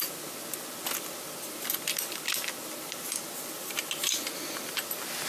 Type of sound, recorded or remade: recorded